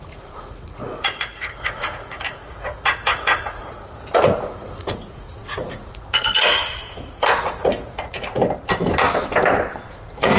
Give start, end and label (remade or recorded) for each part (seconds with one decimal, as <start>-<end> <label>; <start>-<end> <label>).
0.0-8.4 remade; 8.4-9.9 recorded; 9.9-10.4 remade